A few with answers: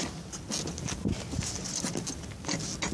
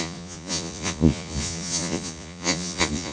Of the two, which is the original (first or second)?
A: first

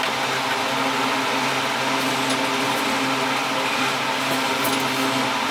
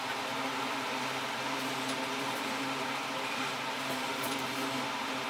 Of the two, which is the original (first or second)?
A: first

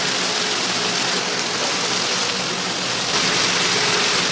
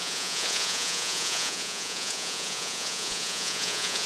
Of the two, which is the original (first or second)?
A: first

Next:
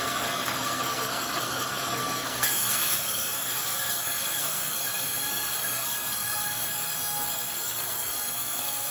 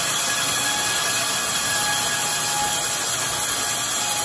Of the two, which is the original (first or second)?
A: second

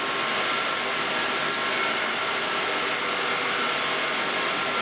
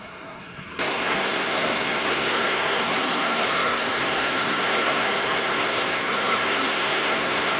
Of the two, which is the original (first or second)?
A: first